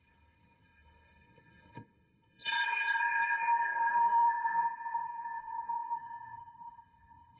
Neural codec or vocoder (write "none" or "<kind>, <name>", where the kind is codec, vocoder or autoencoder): codec, SNAC